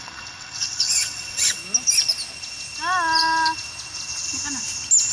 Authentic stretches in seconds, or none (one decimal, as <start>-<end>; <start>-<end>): 1.6-5.1